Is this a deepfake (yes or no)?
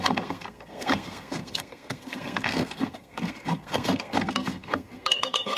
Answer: yes